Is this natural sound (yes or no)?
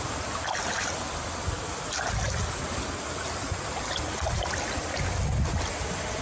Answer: yes